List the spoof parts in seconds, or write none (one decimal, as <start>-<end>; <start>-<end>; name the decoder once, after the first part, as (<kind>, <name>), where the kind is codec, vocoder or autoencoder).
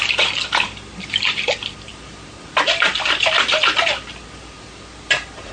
none